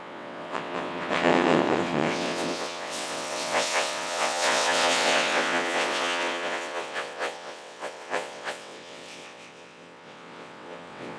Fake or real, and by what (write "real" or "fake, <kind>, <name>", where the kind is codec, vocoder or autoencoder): fake, vocoder, WaveNeXt